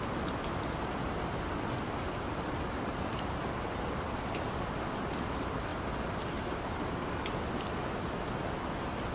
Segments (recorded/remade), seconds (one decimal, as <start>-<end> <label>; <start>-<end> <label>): 0.0-9.1 recorded